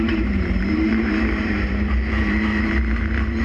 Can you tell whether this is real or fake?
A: fake